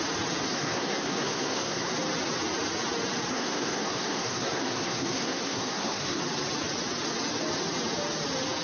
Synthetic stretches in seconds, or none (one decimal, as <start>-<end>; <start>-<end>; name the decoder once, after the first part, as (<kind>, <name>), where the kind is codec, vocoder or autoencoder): 0.5-1.9 (codec, SNAC); 3.3-6.2